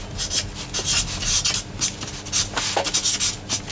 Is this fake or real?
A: real